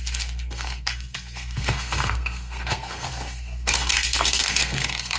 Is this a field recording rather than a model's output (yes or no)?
no